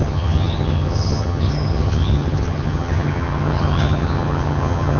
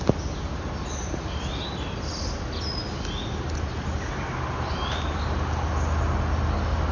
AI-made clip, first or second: first